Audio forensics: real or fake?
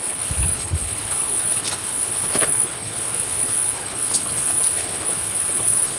fake